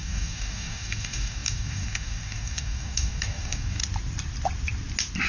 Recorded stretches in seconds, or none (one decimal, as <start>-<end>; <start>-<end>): 3.8-5.3